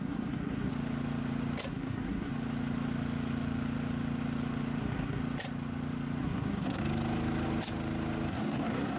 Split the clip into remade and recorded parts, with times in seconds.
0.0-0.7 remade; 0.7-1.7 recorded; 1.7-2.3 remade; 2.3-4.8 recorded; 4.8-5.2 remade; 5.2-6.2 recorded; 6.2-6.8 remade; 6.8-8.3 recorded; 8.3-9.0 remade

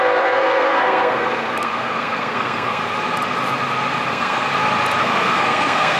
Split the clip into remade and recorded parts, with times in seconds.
0.0-2.8 remade; 2.8-4.1 recorded; 4.1-4.5 remade; 4.5-5.0 recorded; 5.0-6.0 remade

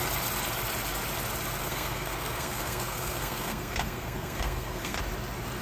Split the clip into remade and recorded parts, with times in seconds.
0.0-1.6 recorded; 1.6-5.0 remade; 5.0-5.6 recorded

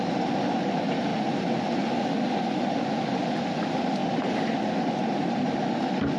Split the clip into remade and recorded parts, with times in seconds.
0.0-6.2 recorded

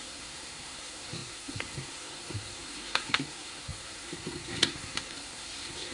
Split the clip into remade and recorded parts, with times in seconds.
0.0-5.9 remade

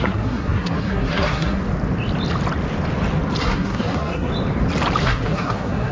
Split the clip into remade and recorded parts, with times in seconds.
0.0-1.6 remade; 1.6-3.4 recorded; 3.4-4.3 remade; 4.3-5.0 recorded; 5.0-5.9 remade

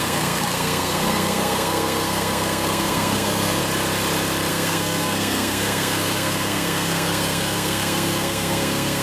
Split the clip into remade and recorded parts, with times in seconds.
0.0-3.6 remade; 3.6-4.5 recorded; 4.5-9.0 remade